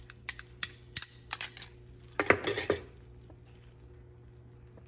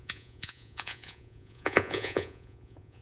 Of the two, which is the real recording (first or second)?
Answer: first